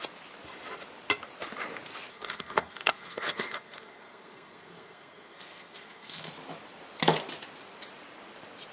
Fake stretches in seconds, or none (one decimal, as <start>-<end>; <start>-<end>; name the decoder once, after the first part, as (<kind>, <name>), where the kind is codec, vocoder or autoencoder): 2.1-6.3 (codec, SNAC)